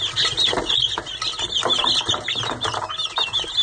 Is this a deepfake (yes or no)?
no